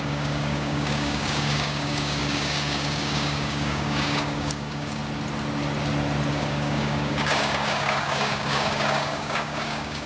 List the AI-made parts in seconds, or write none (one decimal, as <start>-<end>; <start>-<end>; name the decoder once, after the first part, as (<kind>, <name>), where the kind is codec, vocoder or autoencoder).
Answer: 0.0-5.0 (codec, DAC); 6.3-10.1